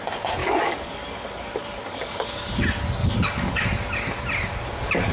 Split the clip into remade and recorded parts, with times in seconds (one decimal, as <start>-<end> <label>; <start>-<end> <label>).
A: 0.0-0.4 recorded; 0.4-2.6 remade; 2.6-3.0 recorded; 3.0-3.6 remade; 3.6-5.1 recorded